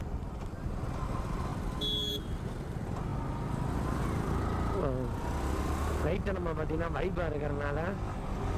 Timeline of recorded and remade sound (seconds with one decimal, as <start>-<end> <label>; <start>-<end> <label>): 0.0-8.6 recorded